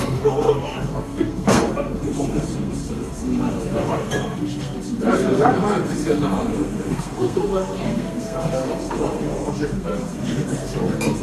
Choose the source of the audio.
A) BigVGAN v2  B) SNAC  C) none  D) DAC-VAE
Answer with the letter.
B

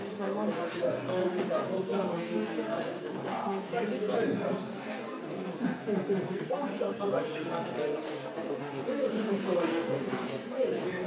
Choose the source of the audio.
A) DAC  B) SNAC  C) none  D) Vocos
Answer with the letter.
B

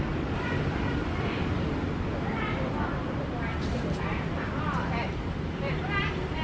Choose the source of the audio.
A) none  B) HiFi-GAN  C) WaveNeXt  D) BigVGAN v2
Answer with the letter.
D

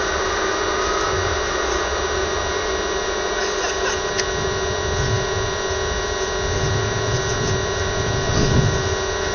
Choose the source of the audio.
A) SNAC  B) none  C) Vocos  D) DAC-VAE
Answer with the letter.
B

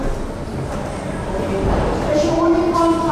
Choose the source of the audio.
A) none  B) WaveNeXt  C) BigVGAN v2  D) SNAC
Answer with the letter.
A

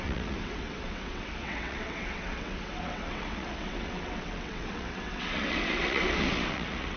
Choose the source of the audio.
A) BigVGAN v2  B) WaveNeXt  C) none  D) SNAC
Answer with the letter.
B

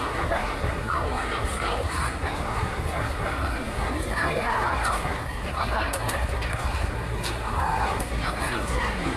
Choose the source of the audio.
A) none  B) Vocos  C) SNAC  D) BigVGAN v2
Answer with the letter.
C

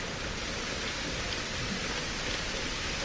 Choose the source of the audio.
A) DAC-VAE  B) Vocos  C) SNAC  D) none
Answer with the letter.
D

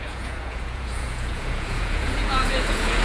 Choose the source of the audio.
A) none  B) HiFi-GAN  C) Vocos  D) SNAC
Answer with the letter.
C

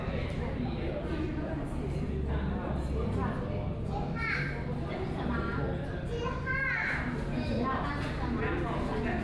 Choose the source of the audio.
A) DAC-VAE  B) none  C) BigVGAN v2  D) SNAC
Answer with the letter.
B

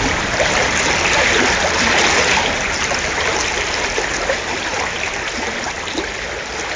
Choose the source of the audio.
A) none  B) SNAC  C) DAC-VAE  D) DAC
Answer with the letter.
A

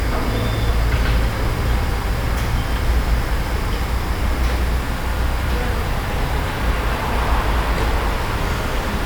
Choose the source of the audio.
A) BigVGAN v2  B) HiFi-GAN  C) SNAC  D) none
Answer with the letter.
D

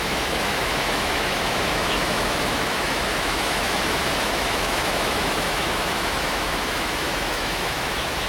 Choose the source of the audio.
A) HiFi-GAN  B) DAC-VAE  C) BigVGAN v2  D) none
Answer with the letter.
B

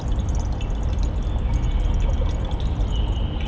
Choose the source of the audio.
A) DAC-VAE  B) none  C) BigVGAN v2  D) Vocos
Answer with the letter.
B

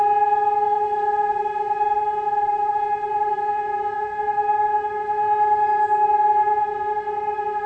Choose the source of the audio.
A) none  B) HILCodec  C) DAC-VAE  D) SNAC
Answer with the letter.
A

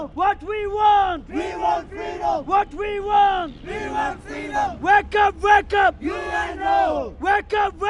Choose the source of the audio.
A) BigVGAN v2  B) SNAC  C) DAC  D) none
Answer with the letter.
D